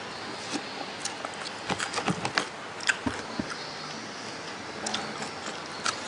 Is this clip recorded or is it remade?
recorded